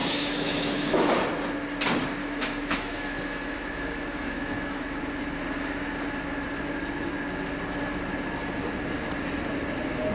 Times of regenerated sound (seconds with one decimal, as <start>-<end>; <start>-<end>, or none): 0.0-1.1; 2.2-5.0